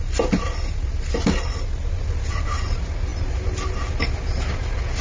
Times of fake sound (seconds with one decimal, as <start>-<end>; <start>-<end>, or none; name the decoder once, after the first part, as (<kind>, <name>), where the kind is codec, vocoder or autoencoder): none